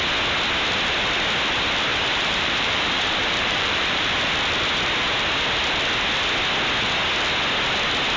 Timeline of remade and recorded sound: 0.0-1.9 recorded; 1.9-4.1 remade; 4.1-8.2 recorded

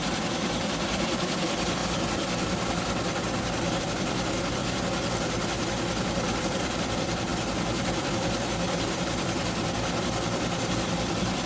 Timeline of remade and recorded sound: 0.0-1.8 remade; 1.8-3.8 recorded; 3.8-4.6 remade; 4.6-6.4 recorded; 6.4-11.5 remade

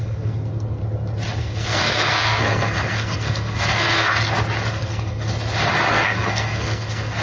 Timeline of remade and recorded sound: 0.0-0.8 remade; 0.8-1.4 recorded; 1.4-4.1 remade; 4.1-4.7 recorded; 4.7-5.3 remade; 5.3-5.9 recorded; 5.9-7.2 remade

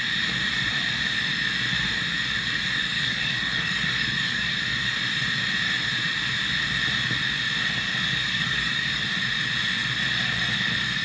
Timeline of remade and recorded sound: 0.0-2.8 recorded; 2.8-4.6 remade; 4.6-8.2 recorded; 8.2-9.0 remade; 9.0-11.0 recorded

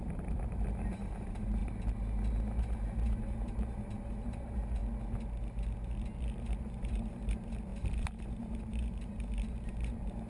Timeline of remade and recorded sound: 0.0-1.6 remade; 1.6-2.6 recorded; 2.6-4.8 remade; 4.8-6.2 recorded; 6.2-10.3 remade

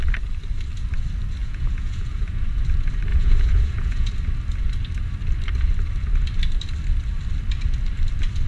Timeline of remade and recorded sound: 0.0-1.4 recorded; 1.4-2.4 remade; 2.4-3.1 recorded; 3.1-4.1 remade; 4.1-8.5 recorded